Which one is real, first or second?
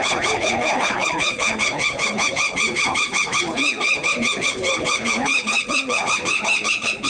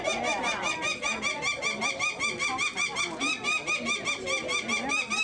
second